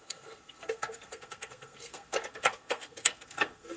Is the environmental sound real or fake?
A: fake